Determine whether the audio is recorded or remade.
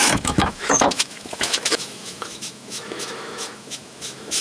remade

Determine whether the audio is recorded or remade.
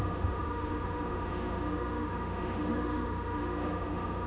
remade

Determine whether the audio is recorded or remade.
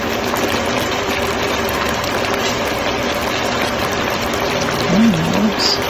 recorded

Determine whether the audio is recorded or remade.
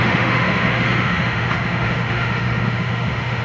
remade